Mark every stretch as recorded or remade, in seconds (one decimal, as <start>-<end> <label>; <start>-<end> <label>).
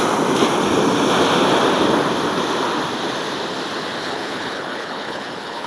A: 0.0-4.0 recorded; 4.0-5.7 remade